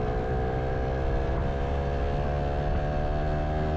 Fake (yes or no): no